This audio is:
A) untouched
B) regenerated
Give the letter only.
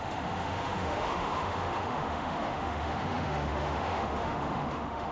B